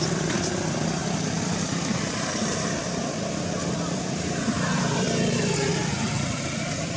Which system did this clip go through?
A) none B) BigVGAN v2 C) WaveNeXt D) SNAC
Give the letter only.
B